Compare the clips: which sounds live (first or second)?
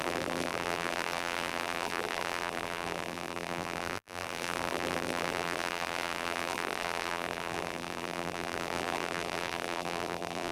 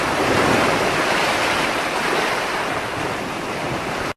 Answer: second